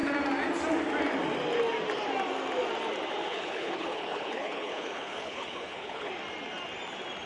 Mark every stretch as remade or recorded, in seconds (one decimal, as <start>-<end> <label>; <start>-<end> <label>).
0.0-3.2 recorded; 3.2-6.1 remade; 6.1-7.3 recorded